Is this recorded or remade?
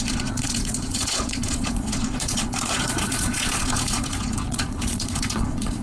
remade